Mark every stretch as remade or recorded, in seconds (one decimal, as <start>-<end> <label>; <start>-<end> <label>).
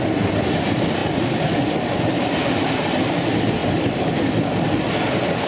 0.0-5.5 recorded